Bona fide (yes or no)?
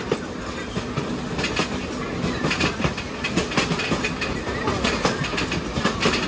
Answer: yes